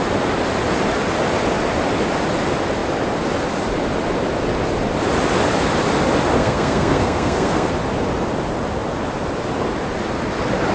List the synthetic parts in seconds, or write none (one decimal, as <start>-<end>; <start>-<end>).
6.4-7.7